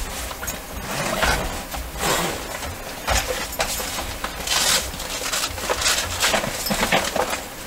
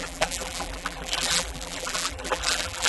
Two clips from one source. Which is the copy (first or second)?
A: second